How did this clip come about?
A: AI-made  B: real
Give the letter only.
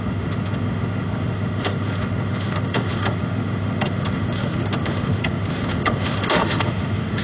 A